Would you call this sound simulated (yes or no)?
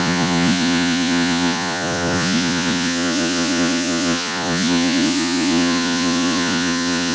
yes